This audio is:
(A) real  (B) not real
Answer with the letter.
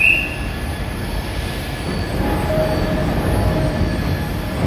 A